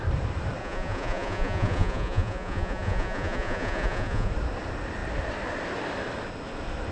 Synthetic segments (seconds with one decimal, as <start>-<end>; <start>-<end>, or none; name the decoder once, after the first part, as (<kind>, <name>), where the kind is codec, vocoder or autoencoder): 0.6-4.3 (vocoder, Vocos)